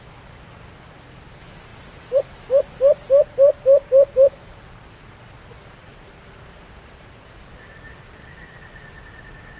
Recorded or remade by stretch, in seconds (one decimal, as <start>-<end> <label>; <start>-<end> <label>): 0.0-5.9 recorded; 5.9-7.2 remade; 7.2-9.6 recorded